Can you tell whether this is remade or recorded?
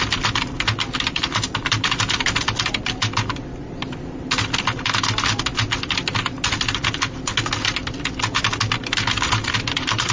recorded